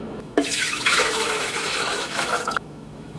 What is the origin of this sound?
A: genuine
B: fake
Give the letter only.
B